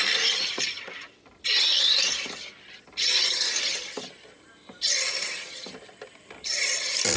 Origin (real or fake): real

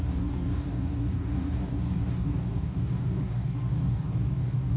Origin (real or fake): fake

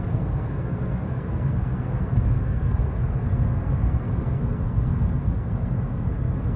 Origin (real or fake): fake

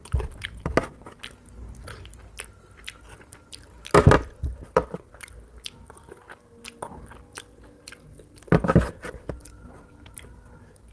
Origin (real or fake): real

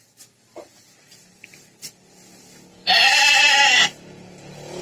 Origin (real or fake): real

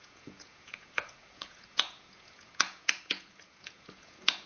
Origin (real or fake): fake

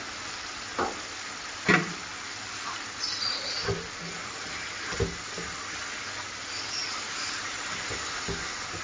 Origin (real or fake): real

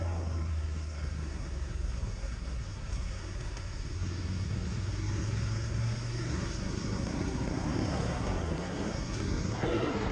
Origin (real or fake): fake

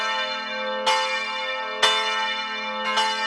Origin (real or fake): real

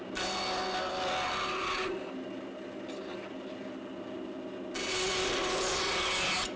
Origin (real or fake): real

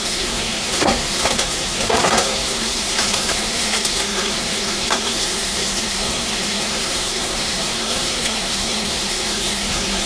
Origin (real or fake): fake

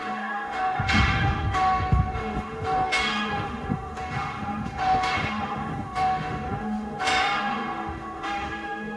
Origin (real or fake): fake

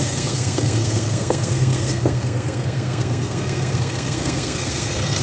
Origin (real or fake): fake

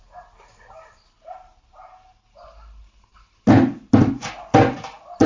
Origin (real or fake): real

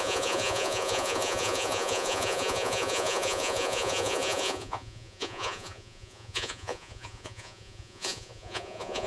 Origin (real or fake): fake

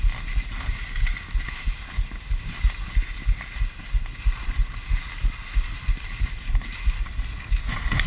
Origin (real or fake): real